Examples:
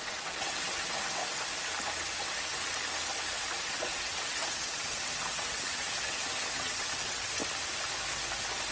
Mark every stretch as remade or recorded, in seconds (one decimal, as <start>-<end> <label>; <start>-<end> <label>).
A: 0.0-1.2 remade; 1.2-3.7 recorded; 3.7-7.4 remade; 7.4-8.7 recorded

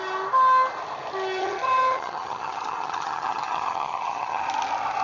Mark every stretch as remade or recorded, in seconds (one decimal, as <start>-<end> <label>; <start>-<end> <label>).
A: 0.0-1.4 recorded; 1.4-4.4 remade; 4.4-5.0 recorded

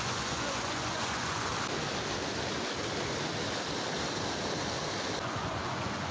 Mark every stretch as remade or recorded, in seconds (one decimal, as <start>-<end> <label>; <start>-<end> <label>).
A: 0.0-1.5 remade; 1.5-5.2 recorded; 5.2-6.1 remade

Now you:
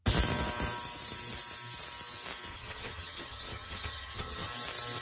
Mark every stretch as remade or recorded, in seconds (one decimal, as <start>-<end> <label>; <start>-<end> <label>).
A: 0.0-2.5 recorded; 2.5-4.5 remade; 4.5-5.0 recorded